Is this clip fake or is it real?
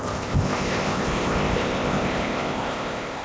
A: fake